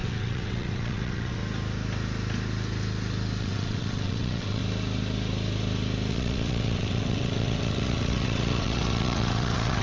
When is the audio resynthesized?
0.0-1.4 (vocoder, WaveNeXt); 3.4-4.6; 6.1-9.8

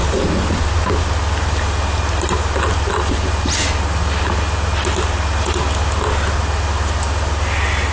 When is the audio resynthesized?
none

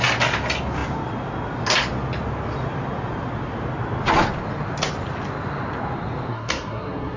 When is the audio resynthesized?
6.3-7.2 (codec, SNAC)

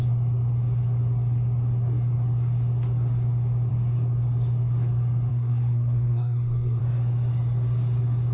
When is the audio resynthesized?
5.3-6.8 (codec, SNAC)

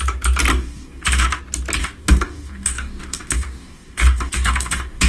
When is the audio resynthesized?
0.5-1.4 (codec, DAC); 1.8-5.1